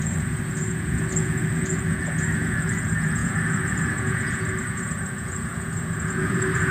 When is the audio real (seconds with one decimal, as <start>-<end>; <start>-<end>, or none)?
none